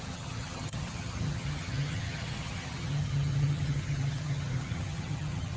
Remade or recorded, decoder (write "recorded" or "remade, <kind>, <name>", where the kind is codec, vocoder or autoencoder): remade, vocoder, HiFi-GAN